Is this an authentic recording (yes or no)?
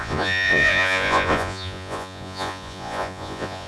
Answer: no